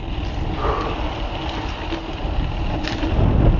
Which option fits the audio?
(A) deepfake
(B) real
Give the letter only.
B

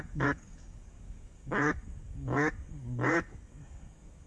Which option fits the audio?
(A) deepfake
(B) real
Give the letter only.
A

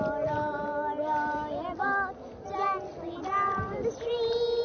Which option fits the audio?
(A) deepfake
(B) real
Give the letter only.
B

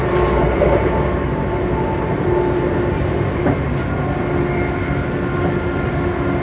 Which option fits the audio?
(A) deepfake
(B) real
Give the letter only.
B